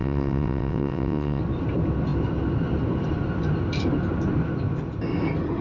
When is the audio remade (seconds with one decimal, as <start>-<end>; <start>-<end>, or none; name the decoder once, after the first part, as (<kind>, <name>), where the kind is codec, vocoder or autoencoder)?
0.0-1.4 (vocoder, WaveNeXt)